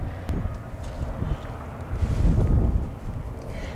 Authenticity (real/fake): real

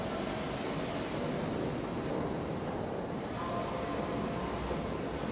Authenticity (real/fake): real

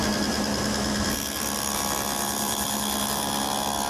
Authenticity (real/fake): real